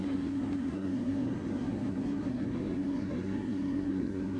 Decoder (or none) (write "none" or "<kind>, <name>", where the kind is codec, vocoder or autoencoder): codec, SNAC